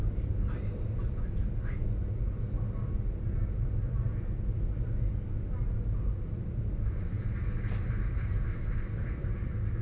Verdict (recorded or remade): recorded